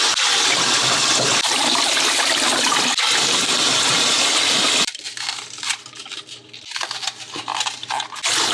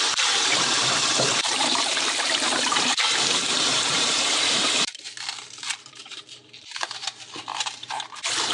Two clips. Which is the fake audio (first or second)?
second